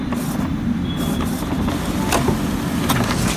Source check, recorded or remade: recorded